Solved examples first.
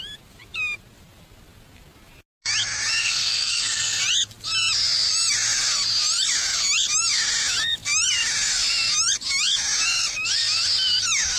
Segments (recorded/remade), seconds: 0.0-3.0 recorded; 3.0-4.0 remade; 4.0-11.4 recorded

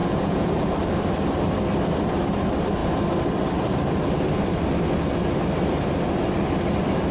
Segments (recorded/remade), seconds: 0.0-0.5 remade; 0.5-7.1 recorded

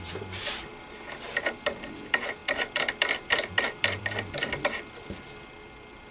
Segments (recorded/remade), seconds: 0.0-6.1 recorded